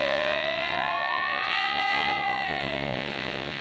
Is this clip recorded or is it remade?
remade